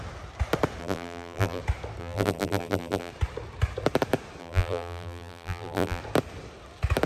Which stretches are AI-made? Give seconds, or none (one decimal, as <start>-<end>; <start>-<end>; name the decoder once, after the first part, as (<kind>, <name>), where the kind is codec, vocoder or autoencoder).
0.8-1.6 (vocoder, BigVGAN v2); 2.0-3.1; 4.4-6.0